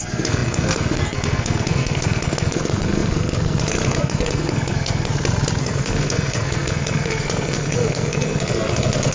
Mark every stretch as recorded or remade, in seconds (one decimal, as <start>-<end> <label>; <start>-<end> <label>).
0.0-5.1 remade; 5.1-5.6 recorded; 5.6-9.1 remade